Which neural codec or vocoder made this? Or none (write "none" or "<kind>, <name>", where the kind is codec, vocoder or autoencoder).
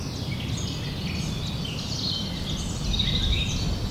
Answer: none